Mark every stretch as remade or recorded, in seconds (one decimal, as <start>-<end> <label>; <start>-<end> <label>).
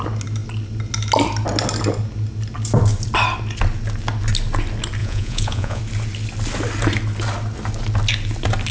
0.0-5.0 recorded; 5.0-5.8 remade; 5.8-8.7 recorded